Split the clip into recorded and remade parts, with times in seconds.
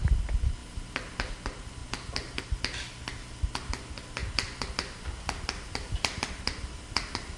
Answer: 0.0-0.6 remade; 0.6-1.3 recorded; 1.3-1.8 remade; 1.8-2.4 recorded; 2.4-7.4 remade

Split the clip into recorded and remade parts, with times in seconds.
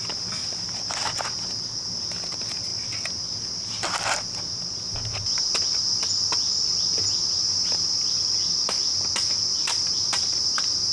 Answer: 0.0-9.6 recorded; 9.6-10.9 remade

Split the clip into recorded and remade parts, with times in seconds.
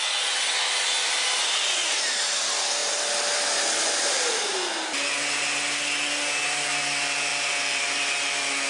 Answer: 0.0-2.8 recorded; 2.8-3.4 remade; 3.4-7.3 recorded; 7.3-8.0 remade; 8.0-8.7 recorded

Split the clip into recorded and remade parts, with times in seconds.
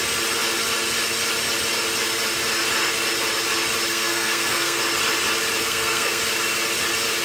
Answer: 0.0-3.9 recorded; 3.9-4.8 remade; 4.8-5.6 recorded; 5.6-6.2 remade; 6.2-7.2 recorded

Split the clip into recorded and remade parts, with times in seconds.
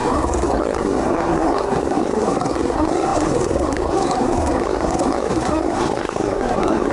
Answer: 0.0-6.9 remade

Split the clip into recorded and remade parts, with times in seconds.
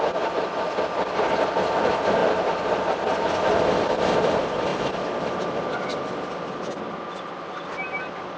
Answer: 0.0-8.4 recorded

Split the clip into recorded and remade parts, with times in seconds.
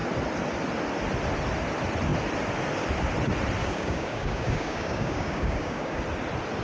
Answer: 0.0-3.6 recorded; 3.6-6.0 remade; 6.0-6.6 recorded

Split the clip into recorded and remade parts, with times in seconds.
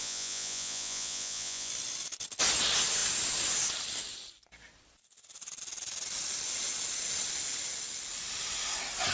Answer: 0.0-1.7 remade; 1.7-9.1 recorded